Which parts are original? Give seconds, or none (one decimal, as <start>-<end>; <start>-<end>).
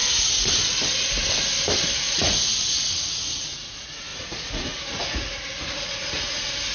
0.0-2.0